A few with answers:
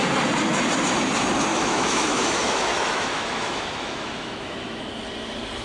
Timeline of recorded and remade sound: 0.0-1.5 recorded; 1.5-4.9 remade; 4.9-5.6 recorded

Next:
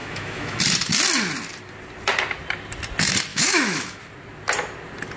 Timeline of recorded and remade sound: 0.0-0.6 remade; 0.6-3.3 recorded; 3.3-4.0 remade; 4.0-5.2 recorded

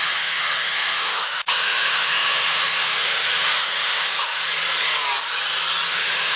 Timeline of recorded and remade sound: 0.0-4.5 remade; 4.5-5.9 recorded; 5.9-6.4 remade

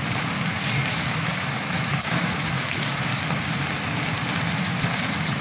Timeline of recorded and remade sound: 0.0-0.8 recorded; 0.8-3.1 remade; 3.1-5.4 recorded